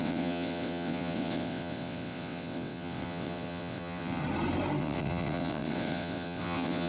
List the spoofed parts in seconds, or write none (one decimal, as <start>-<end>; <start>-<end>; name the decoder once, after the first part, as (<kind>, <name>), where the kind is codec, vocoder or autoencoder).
0.0-4.2 (vocoder, WaveNeXt); 4.8-6.9